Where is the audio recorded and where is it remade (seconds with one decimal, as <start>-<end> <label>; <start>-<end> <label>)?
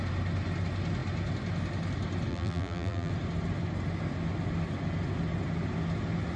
0.0-2.3 recorded; 2.3-3.1 remade; 3.1-6.4 recorded